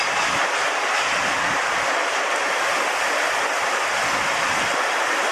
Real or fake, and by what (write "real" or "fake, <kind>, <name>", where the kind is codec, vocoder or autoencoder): real